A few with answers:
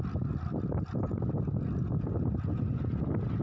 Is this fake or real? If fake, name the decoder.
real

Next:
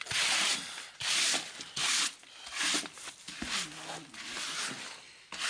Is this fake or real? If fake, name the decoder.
real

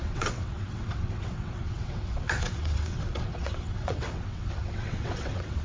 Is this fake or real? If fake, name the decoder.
fake, vocoder, WaveNeXt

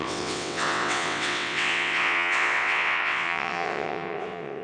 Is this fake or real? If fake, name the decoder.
fake, vocoder, WaveNeXt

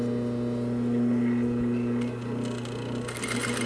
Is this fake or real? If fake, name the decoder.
real